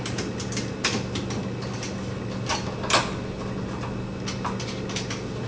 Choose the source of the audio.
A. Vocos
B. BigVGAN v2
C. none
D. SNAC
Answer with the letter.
C